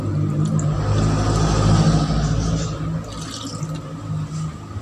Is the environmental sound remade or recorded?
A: recorded